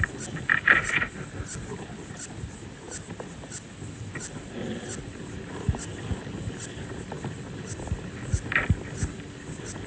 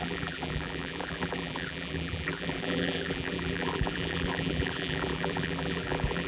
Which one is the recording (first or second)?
first